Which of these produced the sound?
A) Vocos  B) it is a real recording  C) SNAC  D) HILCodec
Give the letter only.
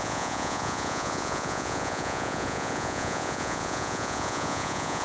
A